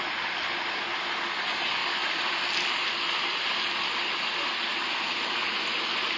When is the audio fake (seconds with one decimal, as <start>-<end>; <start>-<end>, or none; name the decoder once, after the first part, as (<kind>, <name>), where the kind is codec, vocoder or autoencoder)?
none